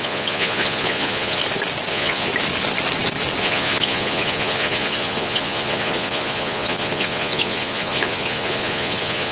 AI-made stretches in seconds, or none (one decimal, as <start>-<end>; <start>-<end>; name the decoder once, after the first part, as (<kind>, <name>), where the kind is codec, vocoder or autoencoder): 0.0-1.4 (vocoder, Vocos); 1.9-2.3; 3.4-9.3